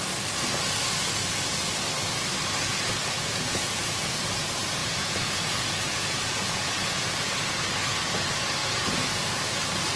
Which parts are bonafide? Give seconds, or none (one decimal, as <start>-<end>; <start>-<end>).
0.0-2.7; 4.1-4.8; 7.6-8.6; 9.4-10.0